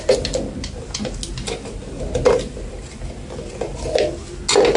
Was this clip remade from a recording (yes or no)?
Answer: no